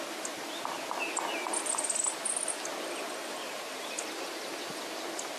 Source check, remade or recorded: recorded